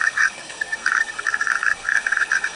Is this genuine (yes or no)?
no